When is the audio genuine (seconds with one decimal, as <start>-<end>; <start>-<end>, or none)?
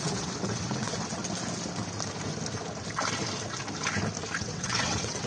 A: 1.2-4.4